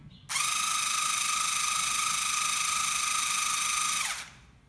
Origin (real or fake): real